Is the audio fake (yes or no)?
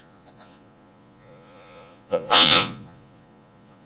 yes